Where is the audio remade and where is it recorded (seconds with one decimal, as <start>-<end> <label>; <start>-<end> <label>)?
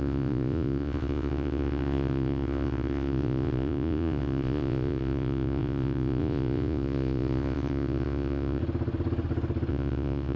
0.0-8.6 remade; 8.6-9.7 recorded; 9.7-10.4 remade